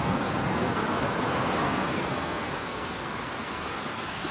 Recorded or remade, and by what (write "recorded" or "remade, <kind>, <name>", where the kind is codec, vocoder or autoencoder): remade, codec, SNAC